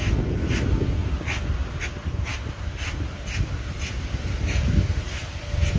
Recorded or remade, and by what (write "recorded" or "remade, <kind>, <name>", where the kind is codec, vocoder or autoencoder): recorded